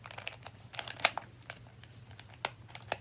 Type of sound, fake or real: real